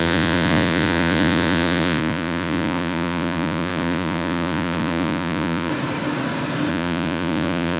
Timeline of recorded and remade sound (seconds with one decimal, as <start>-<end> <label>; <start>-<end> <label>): 0.0-5.7 remade; 5.7-6.7 recorded; 6.7-7.8 remade